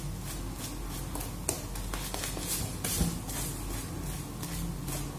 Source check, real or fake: real